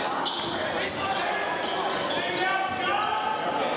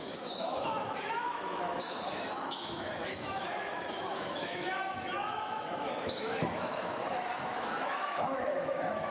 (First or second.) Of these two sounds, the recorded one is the first